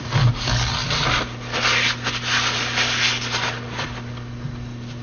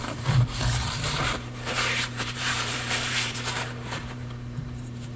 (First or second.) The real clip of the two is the first